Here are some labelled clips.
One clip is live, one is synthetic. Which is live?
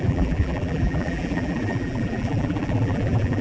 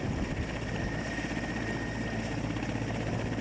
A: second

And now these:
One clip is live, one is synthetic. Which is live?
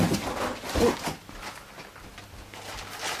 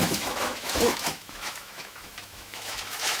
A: first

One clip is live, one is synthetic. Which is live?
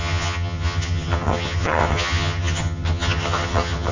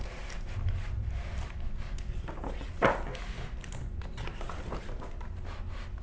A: second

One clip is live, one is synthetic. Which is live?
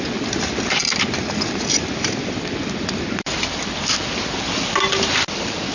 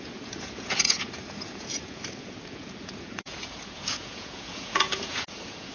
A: first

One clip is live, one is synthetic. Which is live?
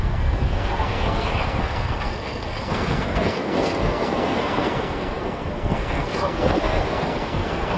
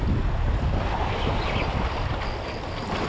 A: second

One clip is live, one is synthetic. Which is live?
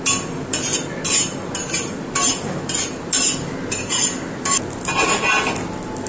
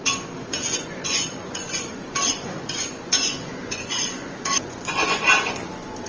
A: first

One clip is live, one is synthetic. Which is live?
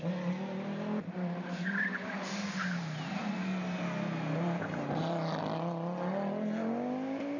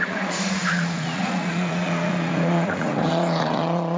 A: first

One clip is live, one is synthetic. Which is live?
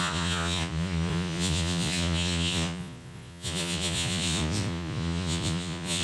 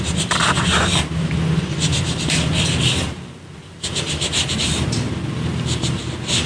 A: second